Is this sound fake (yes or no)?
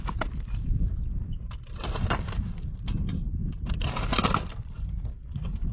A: no